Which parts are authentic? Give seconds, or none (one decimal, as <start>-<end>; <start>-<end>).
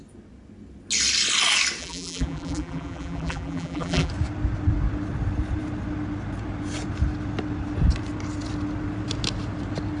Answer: 0.0-1.8; 4.1-10.0